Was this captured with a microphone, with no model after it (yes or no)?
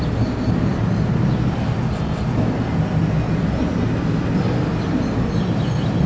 yes